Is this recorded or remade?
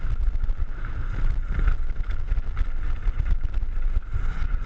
recorded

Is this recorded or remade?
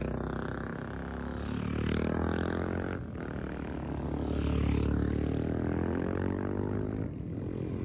recorded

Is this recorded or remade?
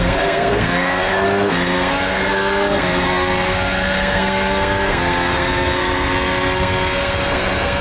remade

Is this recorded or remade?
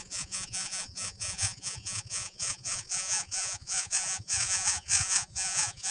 remade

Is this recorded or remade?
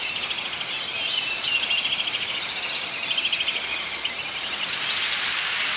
recorded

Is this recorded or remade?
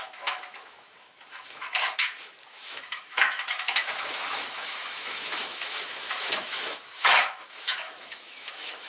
remade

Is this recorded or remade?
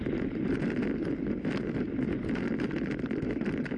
recorded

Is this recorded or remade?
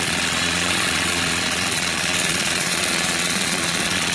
remade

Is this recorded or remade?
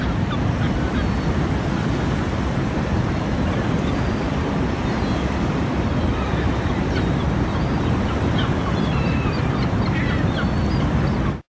recorded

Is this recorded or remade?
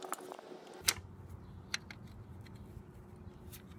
recorded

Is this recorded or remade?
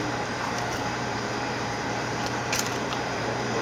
remade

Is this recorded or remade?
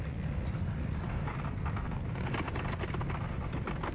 recorded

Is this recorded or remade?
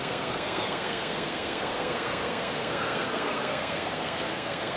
remade